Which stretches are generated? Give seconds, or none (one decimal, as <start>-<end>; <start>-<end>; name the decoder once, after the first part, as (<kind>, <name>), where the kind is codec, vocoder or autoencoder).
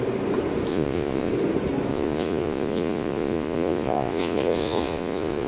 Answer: 0.7-1.3 (vocoder, Vocos); 1.9-5.5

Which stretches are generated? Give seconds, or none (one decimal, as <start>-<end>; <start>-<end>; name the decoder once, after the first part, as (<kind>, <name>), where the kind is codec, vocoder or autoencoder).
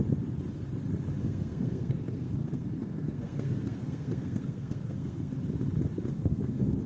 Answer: 1.2-5.3 (codec, SNAC); 6.1-6.9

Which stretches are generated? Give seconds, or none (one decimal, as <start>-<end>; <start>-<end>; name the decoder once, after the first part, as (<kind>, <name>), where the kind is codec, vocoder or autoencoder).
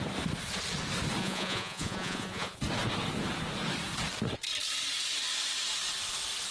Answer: 1.2-2.6 (vocoder, Vocos)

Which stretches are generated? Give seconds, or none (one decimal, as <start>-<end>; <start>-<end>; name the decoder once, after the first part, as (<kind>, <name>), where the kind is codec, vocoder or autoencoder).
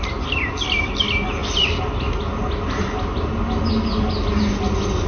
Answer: none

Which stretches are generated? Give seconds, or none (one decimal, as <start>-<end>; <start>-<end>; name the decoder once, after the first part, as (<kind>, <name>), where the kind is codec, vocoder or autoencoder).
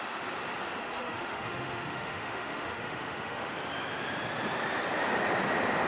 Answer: 0.8-3.5 (autoencoder, DAC-VAE)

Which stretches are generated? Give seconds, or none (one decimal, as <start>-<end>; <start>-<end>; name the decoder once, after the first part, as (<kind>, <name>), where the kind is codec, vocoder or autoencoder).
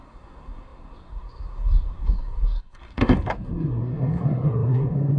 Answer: 0.0-5.2 (codec, SNAC)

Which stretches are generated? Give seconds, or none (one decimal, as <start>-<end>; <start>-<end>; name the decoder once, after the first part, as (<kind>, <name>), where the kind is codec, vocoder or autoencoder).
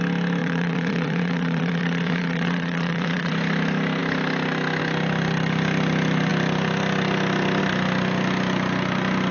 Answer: 0.4-3.3 (vocoder, Vocos)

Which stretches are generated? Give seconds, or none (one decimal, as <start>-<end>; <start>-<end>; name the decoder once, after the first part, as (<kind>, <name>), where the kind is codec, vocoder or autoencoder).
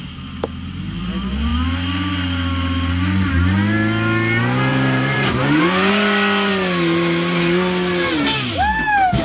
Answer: 4.7-5.9 (vocoder, BigVGAN v2)